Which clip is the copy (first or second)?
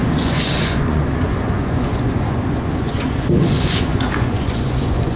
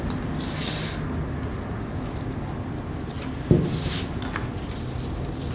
first